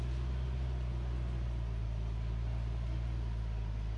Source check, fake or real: real